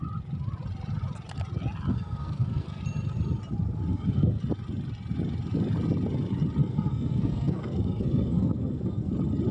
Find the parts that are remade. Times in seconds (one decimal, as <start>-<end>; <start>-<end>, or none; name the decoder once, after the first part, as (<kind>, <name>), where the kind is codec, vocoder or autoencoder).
1.9-2.8 (codec, SNAC); 3.9-4.4; 6.6-9.1